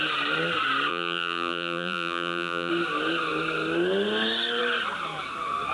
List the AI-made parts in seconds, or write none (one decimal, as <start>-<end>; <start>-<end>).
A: 0.9-2.7